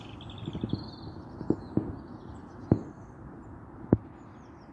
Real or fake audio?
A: real